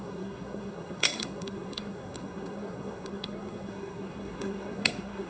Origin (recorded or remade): remade